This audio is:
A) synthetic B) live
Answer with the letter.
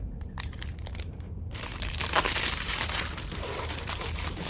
A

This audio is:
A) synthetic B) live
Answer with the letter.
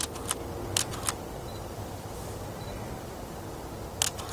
B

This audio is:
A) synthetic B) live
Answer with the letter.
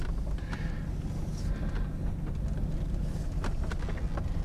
B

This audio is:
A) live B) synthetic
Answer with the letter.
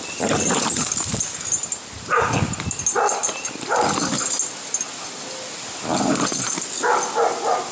A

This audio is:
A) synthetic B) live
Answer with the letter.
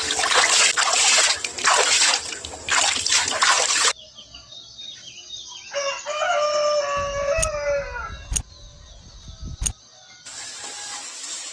B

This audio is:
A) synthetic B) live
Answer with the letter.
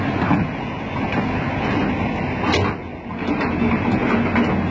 B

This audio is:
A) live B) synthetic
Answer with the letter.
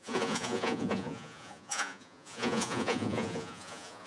B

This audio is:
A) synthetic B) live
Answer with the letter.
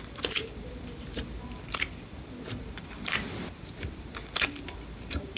A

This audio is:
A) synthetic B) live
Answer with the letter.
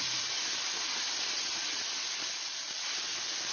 B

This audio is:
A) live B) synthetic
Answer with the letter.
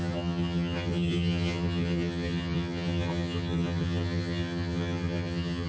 B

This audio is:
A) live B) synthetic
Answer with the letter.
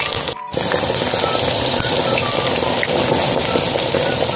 A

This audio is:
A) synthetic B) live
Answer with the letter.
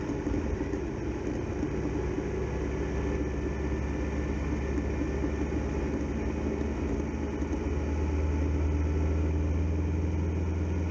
B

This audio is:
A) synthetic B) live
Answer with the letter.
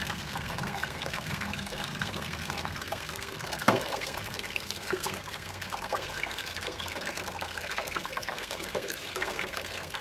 A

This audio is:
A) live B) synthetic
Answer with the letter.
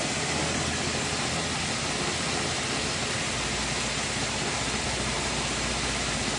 A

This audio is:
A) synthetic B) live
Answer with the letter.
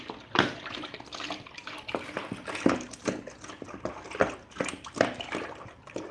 B